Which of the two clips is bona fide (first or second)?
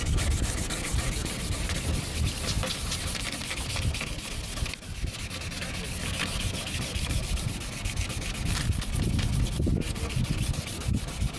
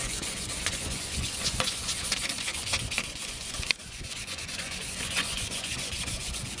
first